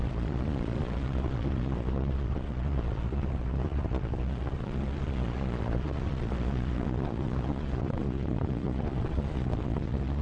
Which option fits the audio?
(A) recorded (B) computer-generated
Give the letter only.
B